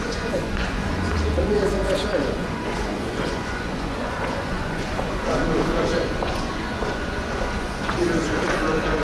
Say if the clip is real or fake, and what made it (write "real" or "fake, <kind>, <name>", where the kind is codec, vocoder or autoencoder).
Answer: fake, vocoder, Vocos